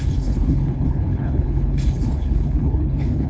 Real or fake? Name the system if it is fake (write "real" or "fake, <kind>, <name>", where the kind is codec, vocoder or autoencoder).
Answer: fake, codec, HILCodec